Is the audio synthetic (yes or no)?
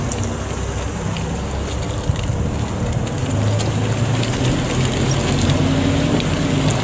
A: no